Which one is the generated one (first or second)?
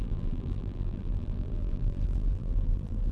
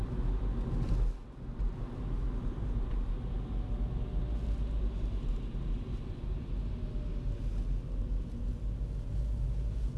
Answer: first